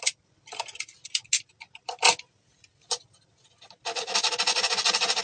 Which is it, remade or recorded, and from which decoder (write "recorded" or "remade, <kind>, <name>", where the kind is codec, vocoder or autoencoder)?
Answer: recorded